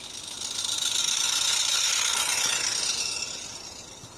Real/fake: real